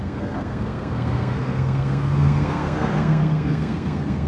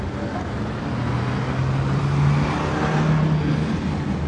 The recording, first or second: second